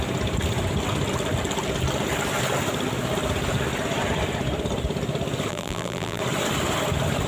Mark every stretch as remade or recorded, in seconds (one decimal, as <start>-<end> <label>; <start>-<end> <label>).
0.0-5.5 recorded; 5.5-6.2 remade; 6.2-7.3 recorded